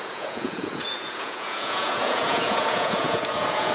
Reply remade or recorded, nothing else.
remade